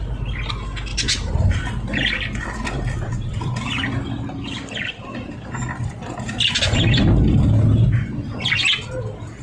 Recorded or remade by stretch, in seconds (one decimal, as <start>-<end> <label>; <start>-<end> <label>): 0.0-0.9 recorded; 0.9-5.5 remade; 5.5-9.4 recorded